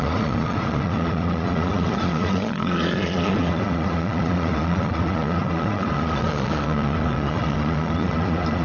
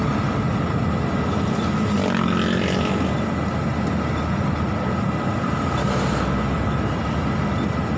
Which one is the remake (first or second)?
first